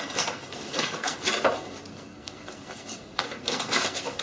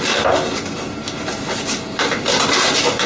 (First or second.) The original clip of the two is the second